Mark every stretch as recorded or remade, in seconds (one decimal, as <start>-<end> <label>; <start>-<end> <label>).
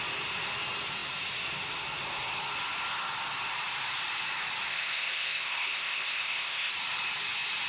0.0-4.7 recorded; 4.7-6.7 remade; 6.7-7.7 recorded